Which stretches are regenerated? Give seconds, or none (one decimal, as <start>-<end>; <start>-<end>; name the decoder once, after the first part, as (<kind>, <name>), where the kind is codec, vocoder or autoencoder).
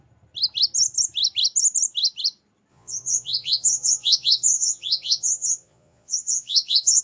2.7-7.0 (vocoder, Vocos)